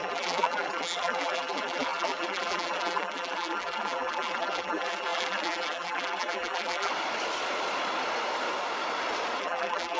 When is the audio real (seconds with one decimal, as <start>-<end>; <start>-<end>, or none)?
6.9-9.4